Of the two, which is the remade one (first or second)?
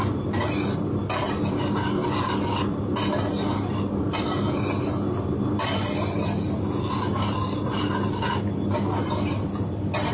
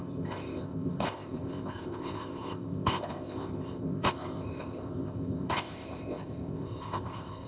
second